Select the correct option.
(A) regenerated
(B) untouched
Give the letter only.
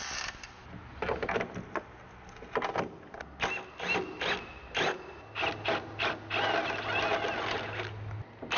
B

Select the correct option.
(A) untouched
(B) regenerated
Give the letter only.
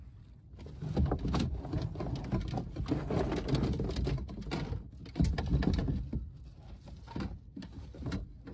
A